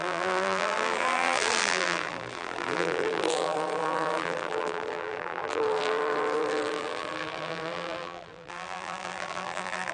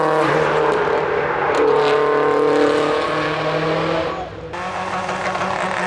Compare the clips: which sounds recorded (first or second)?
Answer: second